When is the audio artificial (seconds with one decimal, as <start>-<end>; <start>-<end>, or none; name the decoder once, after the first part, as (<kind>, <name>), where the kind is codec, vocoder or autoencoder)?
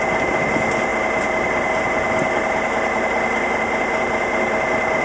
none